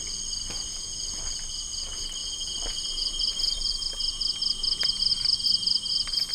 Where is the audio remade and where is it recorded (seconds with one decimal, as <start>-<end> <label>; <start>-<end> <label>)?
0.0-2.2 recorded; 2.2-3.9 remade; 3.9-5.1 recorded; 5.1-6.3 remade